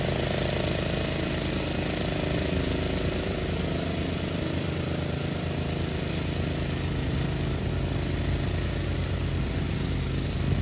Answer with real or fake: fake